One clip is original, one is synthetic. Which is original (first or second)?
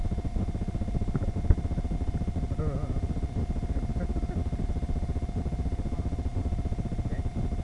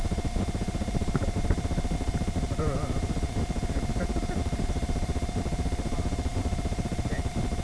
first